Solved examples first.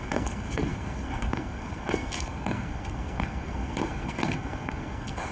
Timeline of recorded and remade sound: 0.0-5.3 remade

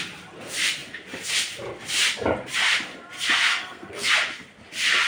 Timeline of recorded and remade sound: 0.0-3.5 recorded; 3.5-4.1 remade; 4.1-5.1 recorded

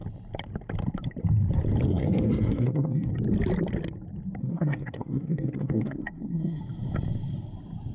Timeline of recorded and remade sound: 0.0-1.9 recorded; 1.9-3.1 remade; 3.1-4.4 recorded; 4.4-6.6 remade; 6.6-7.9 recorded

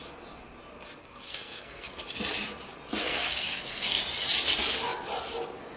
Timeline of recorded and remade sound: 0.0-1.0 recorded; 1.0-1.9 remade; 1.9-3.0 recorded; 3.0-4.0 remade; 4.0-5.8 recorded

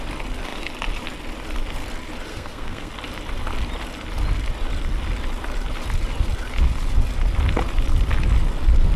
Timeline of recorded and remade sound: 0.0-2.3 recorded; 2.3-2.9 remade; 2.9-9.0 recorded

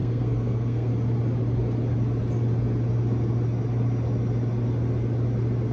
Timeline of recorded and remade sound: 0.0-0.9 remade; 0.9-5.7 recorded